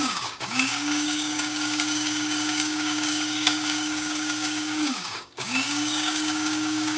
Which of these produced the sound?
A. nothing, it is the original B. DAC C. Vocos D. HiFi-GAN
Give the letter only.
B